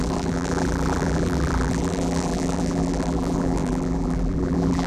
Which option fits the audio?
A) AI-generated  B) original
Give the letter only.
A